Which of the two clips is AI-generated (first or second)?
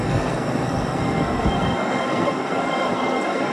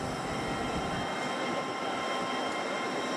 first